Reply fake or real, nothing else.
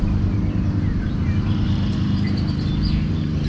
fake